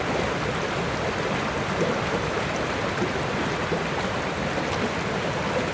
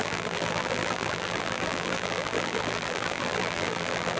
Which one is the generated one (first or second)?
second